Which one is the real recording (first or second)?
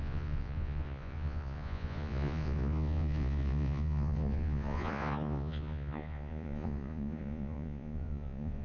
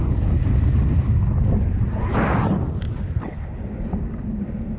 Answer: second